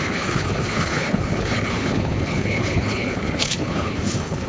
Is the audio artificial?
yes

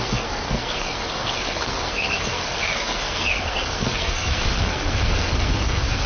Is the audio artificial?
yes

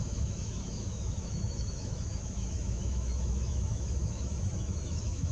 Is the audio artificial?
yes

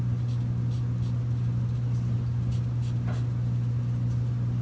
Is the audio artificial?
no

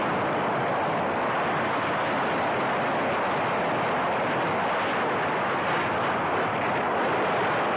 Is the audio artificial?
no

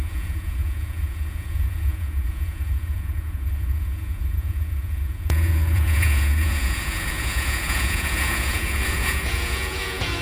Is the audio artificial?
yes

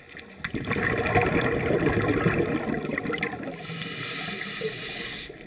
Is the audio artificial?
no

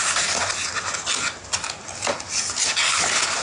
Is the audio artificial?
no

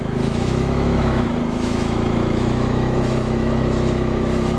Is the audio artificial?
yes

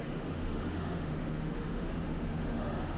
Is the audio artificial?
yes